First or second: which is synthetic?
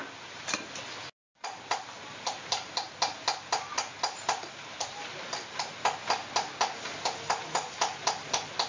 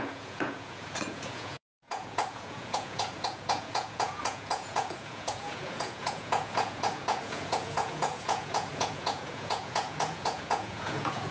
second